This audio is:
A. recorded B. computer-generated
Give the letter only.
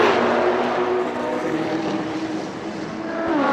A